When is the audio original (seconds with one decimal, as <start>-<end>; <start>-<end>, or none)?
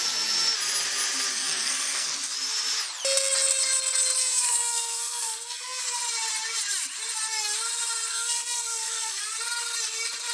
0.0-1.3; 2.1-4.2; 5.8-8.1; 9.2-10.3